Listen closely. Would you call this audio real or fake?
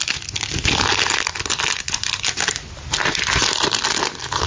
fake